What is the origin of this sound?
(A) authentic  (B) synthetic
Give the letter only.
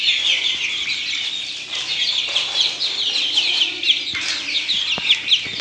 A